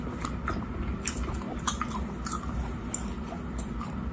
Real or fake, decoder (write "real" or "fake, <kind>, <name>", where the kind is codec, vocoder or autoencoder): real